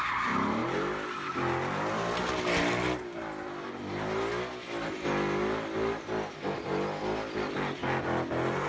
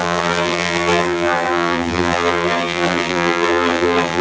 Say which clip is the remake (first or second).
second